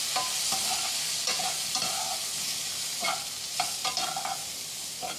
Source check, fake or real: real